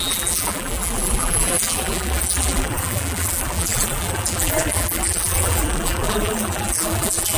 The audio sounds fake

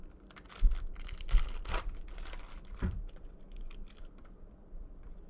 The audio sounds fake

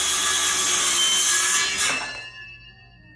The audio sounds real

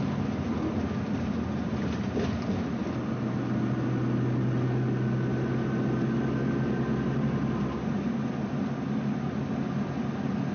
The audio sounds real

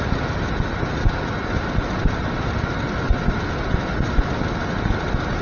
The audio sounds real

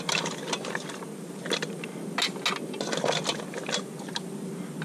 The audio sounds real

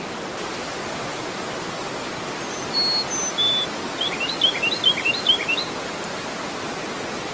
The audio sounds real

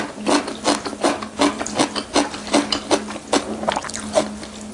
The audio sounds real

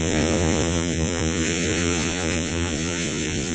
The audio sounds fake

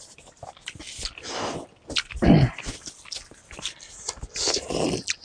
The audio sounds real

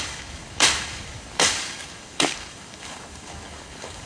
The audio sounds fake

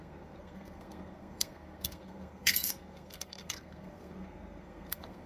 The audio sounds fake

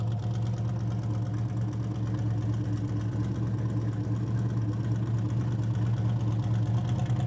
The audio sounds real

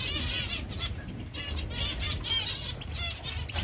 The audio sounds real